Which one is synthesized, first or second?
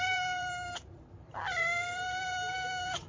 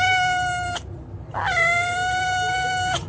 first